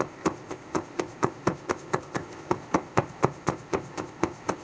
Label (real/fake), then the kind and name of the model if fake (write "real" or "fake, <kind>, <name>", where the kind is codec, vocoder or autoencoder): fake, codec, ZipCodec